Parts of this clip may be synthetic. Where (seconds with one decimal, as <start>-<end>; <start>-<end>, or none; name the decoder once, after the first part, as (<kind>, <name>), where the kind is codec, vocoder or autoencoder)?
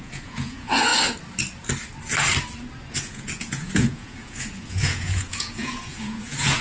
0.0-0.9 (vocoder, Vocos); 2.9-6.6